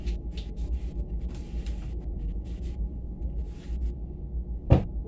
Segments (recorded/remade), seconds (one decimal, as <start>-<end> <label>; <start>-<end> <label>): 0.0-3.4 remade; 3.4-4.6 recorded; 4.6-5.1 remade